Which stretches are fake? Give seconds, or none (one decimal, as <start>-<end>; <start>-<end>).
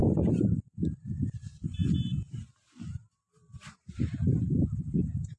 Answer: 0.0-1.8; 3.7-5.4